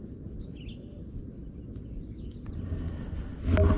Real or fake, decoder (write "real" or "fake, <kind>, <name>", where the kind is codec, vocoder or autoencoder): real